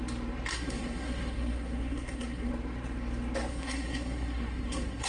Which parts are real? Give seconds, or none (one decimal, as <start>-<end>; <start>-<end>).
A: 0.0-0.5; 2.5-3.5